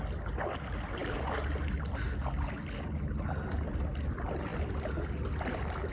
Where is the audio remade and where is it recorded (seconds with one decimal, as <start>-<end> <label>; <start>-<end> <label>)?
0.0-5.9 recorded